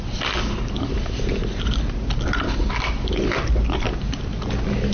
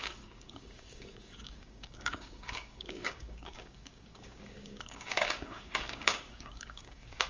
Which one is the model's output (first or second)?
second